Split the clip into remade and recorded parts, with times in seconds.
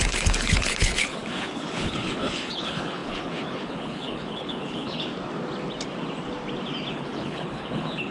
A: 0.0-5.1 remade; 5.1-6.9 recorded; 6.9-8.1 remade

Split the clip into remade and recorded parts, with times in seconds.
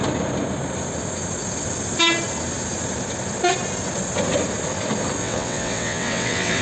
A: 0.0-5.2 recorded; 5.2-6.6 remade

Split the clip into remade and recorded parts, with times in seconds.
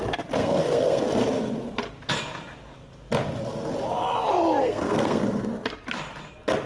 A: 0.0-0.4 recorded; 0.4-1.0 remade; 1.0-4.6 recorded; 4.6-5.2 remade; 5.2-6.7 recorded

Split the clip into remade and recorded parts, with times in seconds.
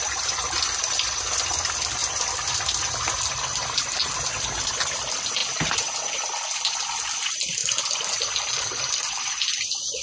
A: 0.0-10.0 recorded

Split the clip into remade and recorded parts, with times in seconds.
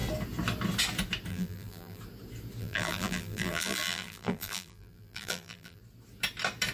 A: 0.0-1.3 recorded; 1.3-2.0 remade; 2.0-2.6 recorded; 2.6-5.8 remade; 5.8-6.7 recorded